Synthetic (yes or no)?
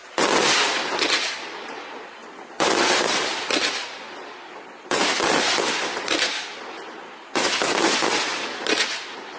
no